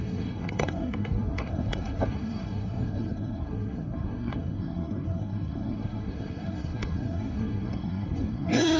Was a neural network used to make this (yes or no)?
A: yes